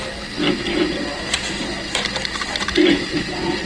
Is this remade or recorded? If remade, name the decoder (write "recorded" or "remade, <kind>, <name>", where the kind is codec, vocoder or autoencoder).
recorded